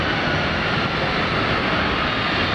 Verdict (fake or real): real